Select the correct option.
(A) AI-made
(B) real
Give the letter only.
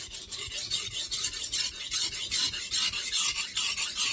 B